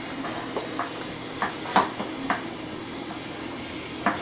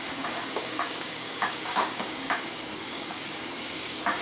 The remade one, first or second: second